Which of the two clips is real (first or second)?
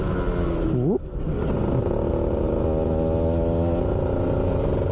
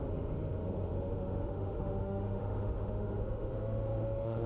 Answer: first